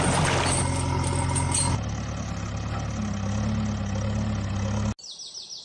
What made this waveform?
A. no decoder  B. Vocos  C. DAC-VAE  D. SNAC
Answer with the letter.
A